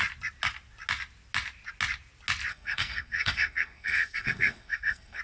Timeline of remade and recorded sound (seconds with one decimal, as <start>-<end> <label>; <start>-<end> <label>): 0.0-2.5 recorded; 2.5-5.2 remade